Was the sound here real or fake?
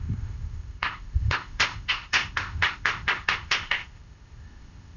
fake